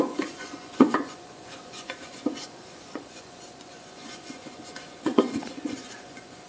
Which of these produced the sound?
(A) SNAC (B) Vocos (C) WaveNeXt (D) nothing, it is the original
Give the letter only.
B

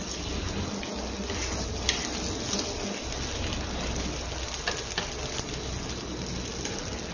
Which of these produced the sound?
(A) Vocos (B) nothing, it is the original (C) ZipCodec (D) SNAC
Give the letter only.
B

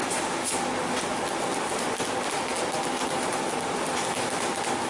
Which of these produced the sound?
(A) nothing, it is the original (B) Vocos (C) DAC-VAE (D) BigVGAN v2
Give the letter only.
A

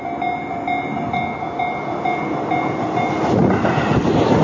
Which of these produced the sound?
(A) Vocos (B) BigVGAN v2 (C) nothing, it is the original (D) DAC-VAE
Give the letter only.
C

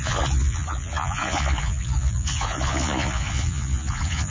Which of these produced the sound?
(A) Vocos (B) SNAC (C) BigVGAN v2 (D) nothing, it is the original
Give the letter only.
A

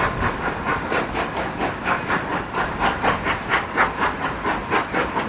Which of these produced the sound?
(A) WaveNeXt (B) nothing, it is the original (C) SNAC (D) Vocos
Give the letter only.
B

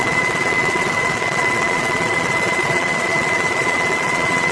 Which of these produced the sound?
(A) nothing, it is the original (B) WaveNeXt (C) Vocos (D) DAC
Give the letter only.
C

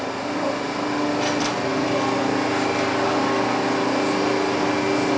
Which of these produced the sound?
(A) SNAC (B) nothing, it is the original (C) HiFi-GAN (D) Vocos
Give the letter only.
B